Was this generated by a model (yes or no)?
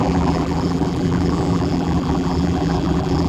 yes